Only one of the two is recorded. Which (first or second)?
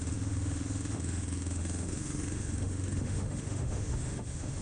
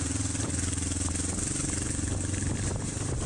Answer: second